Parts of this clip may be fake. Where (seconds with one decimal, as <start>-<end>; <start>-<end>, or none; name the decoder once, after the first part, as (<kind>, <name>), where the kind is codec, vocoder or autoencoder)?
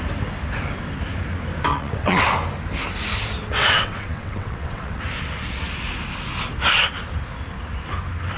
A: 1.7-2.3 (vocoder, WaveNeXt); 3.6-5.0